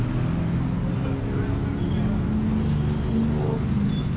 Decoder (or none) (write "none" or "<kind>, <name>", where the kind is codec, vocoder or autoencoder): none